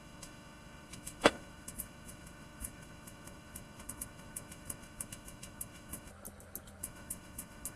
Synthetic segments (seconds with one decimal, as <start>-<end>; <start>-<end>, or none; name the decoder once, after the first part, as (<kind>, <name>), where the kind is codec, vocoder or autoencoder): 0.0-6.1 (autoencoder, DAC-VAE); 6.8-7.8